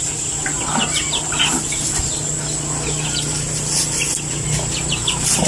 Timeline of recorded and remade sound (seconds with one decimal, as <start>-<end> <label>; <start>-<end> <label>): 0.0-5.5 recorded